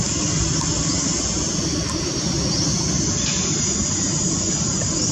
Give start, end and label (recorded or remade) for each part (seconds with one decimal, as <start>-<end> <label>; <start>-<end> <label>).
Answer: 0.0-5.1 recorded